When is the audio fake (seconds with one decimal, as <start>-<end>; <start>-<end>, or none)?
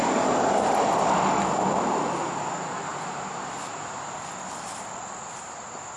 none